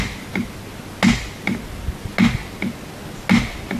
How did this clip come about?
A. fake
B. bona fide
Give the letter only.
B